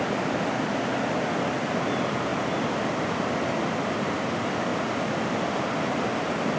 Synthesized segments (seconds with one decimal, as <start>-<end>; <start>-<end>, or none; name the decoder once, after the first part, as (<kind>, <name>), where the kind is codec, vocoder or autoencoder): none